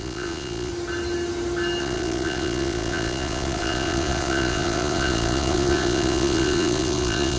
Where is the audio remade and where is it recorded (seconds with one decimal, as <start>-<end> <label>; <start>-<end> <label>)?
0.0-0.7 remade; 0.7-1.8 recorded; 1.8-7.4 remade